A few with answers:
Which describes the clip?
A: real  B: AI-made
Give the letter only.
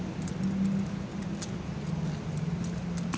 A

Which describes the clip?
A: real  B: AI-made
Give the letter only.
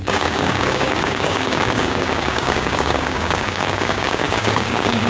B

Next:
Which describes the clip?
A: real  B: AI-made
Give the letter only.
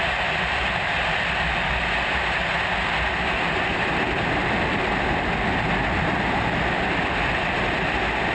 A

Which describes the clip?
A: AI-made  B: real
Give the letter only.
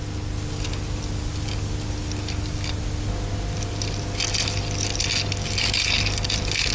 B